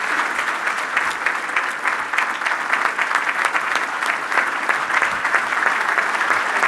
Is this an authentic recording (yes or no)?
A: yes